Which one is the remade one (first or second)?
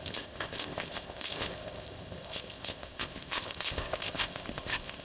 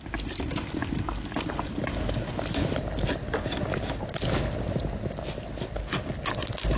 first